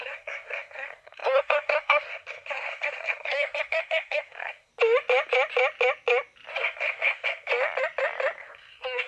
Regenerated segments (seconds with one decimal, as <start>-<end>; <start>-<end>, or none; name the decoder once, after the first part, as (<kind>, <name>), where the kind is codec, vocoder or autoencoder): 0.0-4.7 (codec, SNAC); 6.6-7.5; 8.4-9.1